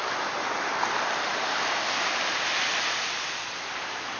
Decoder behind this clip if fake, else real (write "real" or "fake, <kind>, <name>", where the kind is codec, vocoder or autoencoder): real